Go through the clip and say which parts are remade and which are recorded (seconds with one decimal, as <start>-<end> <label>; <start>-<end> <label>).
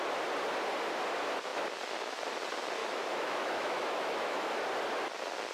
0.0-2.8 recorded; 2.8-4.6 remade; 4.6-5.5 recorded